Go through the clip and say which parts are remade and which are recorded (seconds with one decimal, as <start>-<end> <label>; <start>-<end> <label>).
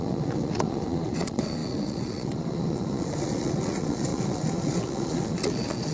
0.0-5.9 remade